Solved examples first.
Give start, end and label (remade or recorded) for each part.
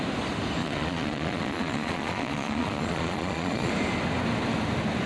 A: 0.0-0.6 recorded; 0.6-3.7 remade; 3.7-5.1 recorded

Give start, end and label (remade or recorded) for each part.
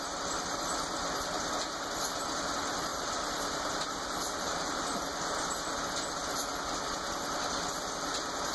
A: 0.0-2.9 recorded; 2.9-4.8 remade; 4.8-8.5 recorded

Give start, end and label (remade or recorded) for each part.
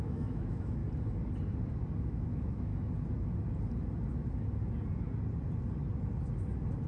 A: 0.0-0.8 remade; 0.8-2.0 recorded; 2.0-2.7 remade; 2.7-6.9 recorded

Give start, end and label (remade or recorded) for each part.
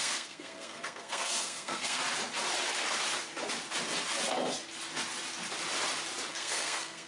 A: 0.0-2.0 remade; 2.0-6.3 recorded; 6.3-7.1 remade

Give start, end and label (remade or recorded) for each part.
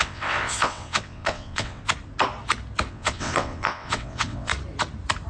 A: 0.0-1.8 remade; 1.8-2.9 recorded; 2.9-4.5 remade; 4.5-5.3 recorded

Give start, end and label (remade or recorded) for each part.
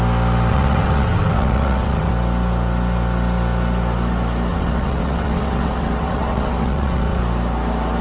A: 0.0-0.5 recorded; 0.5-2.1 remade; 2.1-4.5 recorded; 4.5-7.2 remade; 7.2-8.0 recorded